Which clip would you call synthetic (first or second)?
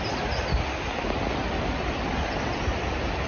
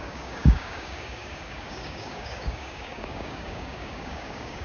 second